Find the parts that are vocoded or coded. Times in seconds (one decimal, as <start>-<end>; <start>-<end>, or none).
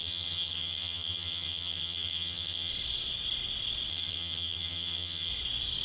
0.0-2.7; 3.9-5.3